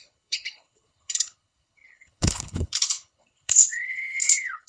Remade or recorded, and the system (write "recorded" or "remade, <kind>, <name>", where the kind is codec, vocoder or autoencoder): remade, codec, HILCodec